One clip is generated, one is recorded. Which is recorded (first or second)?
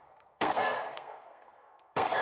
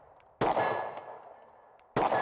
second